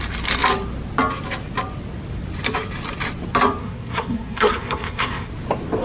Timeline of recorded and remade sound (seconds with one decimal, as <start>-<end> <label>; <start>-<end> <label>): 0.0-3.6 recorded; 3.6-5.3 remade; 5.3-5.8 recorded